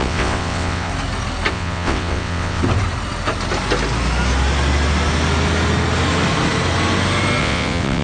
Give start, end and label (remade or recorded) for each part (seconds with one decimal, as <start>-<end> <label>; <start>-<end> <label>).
0.0-0.9 remade; 0.9-1.5 recorded; 1.5-2.6 remade; 2.6-7.4 recorded; 7.4-8.0 remade